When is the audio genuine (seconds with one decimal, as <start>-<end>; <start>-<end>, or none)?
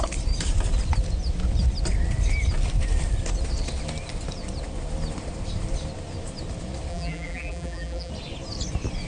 0.0-6.9; 8.1-9.1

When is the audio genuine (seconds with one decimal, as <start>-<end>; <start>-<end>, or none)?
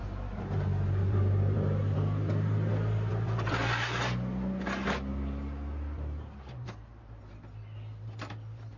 0.0-8.8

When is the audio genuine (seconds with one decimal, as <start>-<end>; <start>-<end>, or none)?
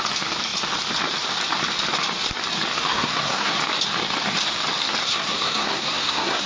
0.0-2.9; 3.6-5.0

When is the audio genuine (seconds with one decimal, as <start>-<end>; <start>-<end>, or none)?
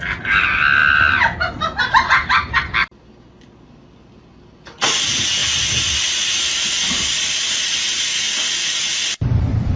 0.0-9.8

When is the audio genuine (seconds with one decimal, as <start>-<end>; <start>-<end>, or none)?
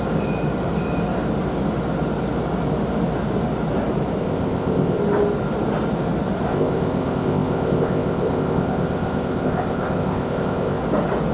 0.0-4.2; 5.0-6.5; 10.8-11.3